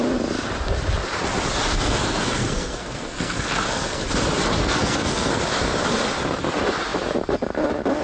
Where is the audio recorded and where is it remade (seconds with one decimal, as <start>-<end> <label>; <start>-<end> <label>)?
0.0-1.7 recorded; 1.7-4.0 remade; 4.0-4.6 recorded; 4.6-5.4 remade; 5.4-8.0 recorded